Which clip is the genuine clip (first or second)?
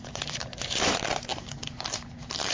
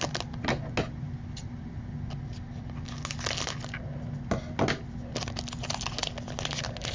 second